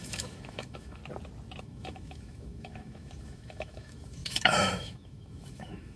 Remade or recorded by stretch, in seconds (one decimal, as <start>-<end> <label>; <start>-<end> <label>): 0.0-1.0 remade; 1.0-1.6 recorded; 1.6-6.0 remade